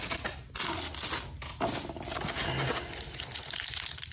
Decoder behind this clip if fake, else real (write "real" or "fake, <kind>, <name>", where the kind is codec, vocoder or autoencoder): real